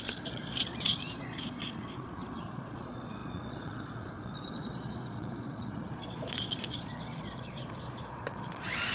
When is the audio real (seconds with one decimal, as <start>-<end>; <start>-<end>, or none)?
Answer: none